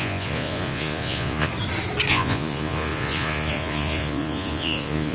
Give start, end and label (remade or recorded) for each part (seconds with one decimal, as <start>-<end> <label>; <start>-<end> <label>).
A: 0.0-1.5 remade; 1.5-2.1 recorded; 2.1-5.1 remade

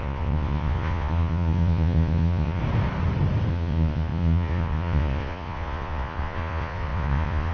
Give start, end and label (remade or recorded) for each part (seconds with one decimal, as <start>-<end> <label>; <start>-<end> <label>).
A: 0.0-2.6 remade; 2.6-3.5 recorded; 3.5-7.5 remade

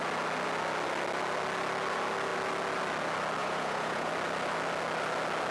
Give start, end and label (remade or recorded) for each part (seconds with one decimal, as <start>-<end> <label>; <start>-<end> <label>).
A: 0.0-3.4 recorded; 3.4-4.1 remade; 4.1-5.5 recorded